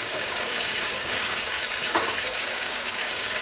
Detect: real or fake fake